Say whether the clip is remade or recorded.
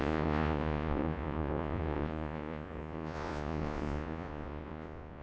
remade